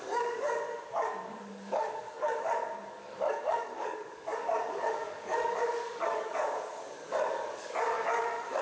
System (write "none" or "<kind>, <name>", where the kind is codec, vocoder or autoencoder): codec, DAC